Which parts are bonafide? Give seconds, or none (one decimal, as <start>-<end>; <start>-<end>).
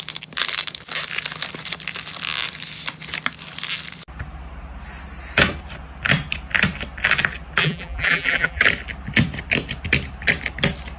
0.0-7.6; 8.6-11.0